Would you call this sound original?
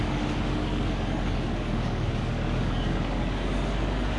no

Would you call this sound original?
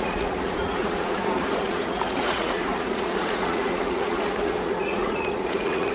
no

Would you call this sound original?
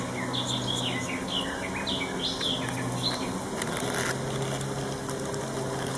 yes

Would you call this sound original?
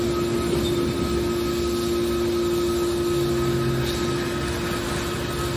yes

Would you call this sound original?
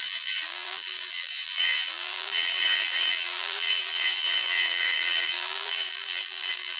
no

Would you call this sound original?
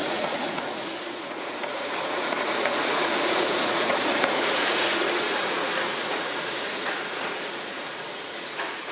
no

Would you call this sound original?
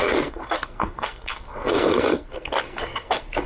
no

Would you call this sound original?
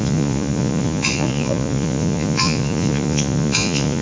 no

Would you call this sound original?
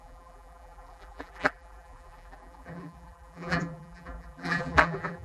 no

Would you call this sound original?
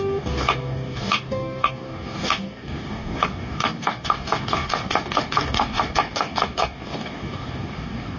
no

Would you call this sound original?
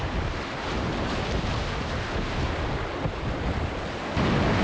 yes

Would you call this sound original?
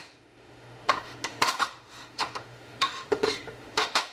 no